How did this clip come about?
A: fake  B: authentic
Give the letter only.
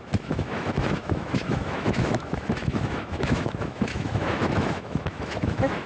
A